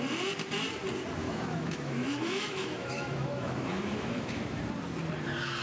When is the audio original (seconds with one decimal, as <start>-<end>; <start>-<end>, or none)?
0.0-1.2; 4.6-5.6